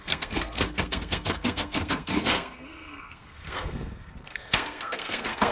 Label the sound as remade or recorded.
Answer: remade